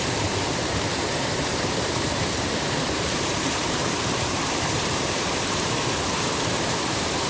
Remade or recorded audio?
remade